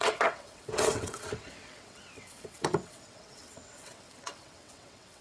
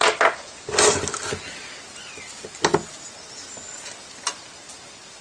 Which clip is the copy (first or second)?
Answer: first